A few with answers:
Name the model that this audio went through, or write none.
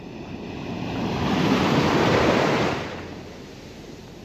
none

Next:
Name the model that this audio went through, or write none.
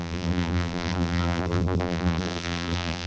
vocoder, BigVGAN v2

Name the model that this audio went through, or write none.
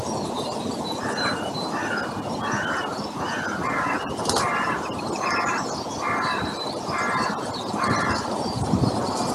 none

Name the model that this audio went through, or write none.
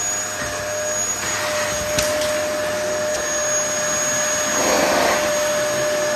none